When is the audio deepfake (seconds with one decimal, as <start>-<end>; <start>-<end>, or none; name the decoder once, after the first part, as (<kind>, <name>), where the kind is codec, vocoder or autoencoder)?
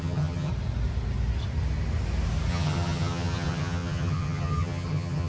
0.0-0.5 (vocoder, HiFi-GAN); 2.5-5.3